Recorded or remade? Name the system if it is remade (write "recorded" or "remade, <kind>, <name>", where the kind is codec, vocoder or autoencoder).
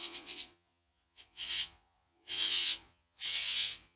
remade, vocoder, Vocos